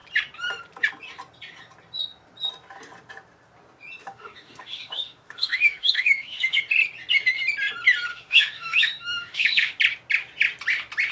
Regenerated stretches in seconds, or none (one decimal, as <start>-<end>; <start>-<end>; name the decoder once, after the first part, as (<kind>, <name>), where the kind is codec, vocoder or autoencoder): 4.0-6.6 (autoencoder, DAC-VAE); 8.1-9.8